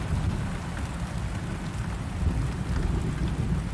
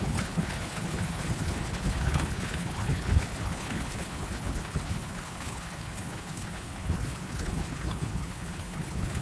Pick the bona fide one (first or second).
first